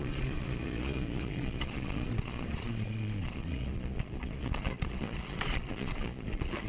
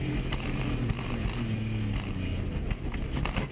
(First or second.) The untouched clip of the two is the second